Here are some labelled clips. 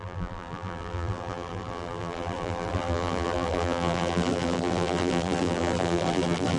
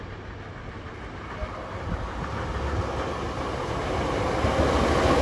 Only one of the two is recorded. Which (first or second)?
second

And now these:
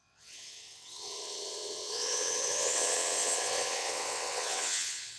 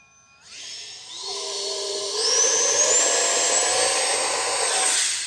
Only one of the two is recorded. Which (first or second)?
second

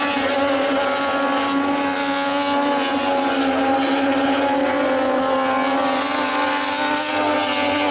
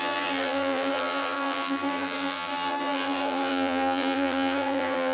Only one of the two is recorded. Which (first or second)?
first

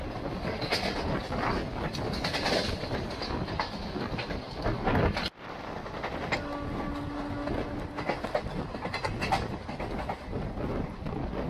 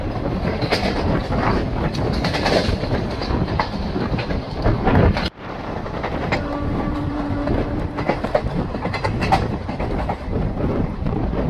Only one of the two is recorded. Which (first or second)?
first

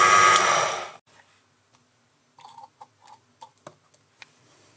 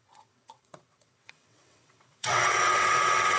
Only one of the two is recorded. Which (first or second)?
first